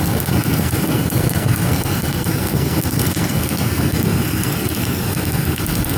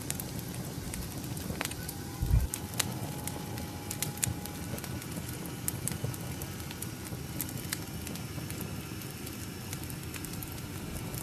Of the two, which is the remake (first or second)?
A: first